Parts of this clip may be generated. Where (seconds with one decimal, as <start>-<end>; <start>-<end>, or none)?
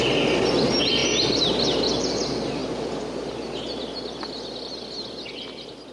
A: none